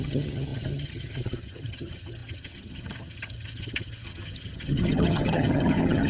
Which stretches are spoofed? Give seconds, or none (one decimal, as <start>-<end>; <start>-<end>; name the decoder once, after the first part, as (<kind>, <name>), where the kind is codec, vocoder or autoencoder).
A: 0.0-6.1 (vocoder, HiFi-GAN)